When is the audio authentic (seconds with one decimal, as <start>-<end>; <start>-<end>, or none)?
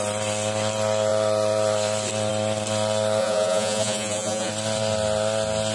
0.0-3.2; 4.5-5.7